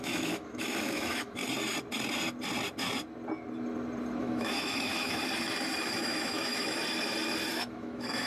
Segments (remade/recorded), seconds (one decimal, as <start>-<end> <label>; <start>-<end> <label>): 0.0-1.4 remade; 1.4-4.2 recorded; 4.2-5.2 remade; 5.2-5.8 recorded; 5.8-6.8 remade; 6.8-7.5 recorded; 7.5-8.3 remade